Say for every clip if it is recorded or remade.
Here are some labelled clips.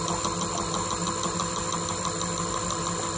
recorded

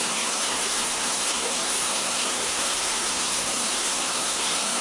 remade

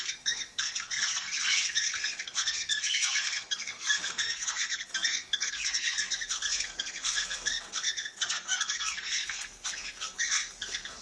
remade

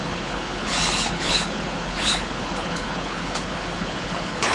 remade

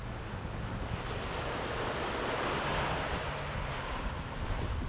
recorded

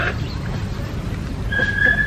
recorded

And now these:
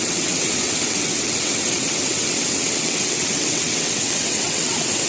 remade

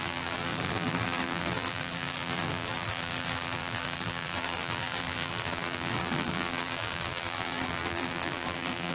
remade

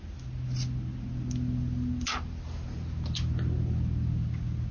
recorded